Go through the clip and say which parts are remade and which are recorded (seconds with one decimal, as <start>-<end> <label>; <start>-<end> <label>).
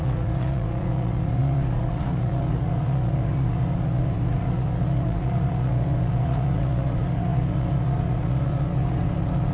0.0-9.5 remade